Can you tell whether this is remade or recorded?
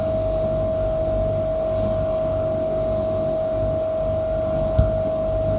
recorded